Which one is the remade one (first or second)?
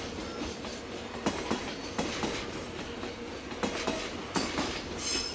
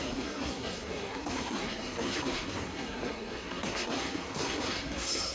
second